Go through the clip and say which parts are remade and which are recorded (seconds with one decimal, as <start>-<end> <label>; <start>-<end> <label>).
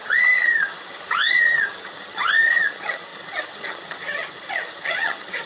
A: 0.0-5.5 remade